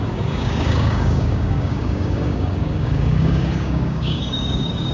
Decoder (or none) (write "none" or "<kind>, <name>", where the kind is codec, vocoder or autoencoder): codec, DAC